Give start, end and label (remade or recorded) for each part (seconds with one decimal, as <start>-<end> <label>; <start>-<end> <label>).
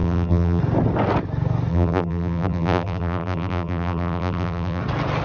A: 0.0-0.6 remade; 0.6-1.7 recorded; 1.7-4.8 remade; 4.8-5.2 recorded